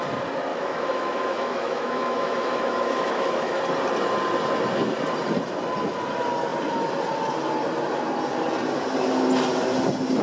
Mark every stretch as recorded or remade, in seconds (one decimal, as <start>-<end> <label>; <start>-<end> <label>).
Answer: 0.0-0.5 recorded; 0.5-3.6 remade; 3.6-10.2 recorded